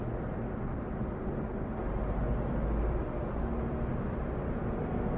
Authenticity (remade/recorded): recorded